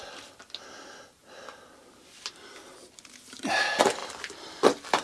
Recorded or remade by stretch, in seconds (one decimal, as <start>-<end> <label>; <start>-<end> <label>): 0.0-4.0 recorded; 4.0-5.0 remade